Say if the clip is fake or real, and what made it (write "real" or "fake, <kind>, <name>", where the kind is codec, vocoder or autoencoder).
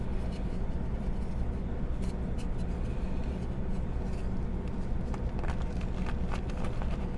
real